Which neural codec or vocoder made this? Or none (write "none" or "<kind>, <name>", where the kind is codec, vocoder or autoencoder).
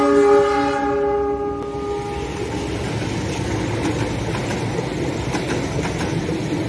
none